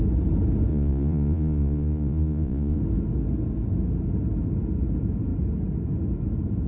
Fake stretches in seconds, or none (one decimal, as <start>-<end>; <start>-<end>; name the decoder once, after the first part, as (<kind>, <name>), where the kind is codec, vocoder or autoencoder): 0.7-2.8 (vocoder, Vocos)